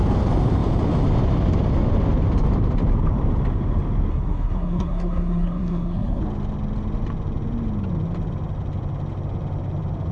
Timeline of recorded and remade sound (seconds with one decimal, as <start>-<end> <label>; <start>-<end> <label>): 0.0-4.1 recorded; 4.1-6.2 remade; 6.2-10.1 recorded